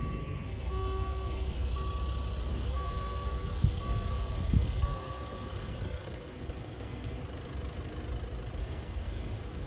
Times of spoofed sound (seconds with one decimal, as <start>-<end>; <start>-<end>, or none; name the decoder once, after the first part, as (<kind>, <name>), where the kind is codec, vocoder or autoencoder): 0.0-1.7 (codec, SNAC); 2.5-7.2; 8.6-9.7